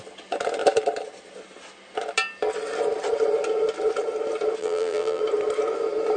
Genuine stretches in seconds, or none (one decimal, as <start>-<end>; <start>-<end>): 0.0-4.6; 5.2-6.2